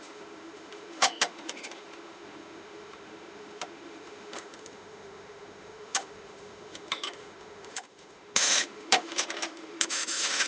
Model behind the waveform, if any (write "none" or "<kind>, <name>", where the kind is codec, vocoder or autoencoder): autoencoder, DAC-VAE